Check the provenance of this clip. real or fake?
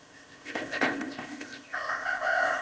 fake